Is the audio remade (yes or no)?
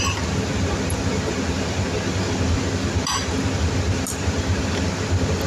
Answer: no